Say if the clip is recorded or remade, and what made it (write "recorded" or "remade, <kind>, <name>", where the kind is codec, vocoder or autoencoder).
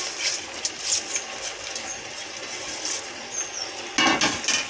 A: recorded